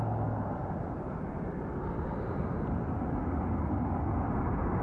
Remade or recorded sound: recorded